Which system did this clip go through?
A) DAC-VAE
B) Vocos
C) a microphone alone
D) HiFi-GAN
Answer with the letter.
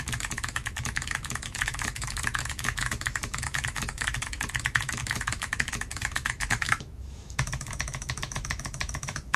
A